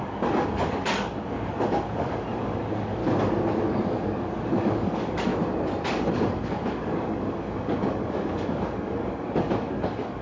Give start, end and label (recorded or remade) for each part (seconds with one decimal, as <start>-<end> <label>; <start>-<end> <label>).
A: 0.0-3.0 remade; 3.0-3.6 recorded; 3.6-5.3 remade; 5.3-5.9 recorded; 5.9-10.2 remade